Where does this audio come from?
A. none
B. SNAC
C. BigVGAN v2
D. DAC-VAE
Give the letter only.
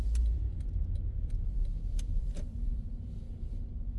C